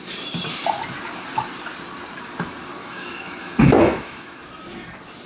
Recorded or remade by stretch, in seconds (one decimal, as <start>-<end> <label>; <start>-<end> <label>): 0.0-2.8 recorded; 2.8-4.4 remade; 4.4-5.3 recorded

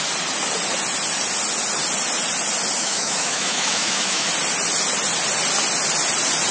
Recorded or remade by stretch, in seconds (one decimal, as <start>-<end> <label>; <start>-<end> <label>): 0.0-2.8 recorded; 2.8-4.3 remade; 4.3-6.5 recorded